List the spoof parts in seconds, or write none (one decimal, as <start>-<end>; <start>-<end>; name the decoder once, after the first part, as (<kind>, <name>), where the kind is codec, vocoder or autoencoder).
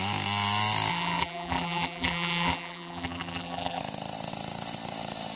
0.9-3.8 (vocoder, BigVGAN v2)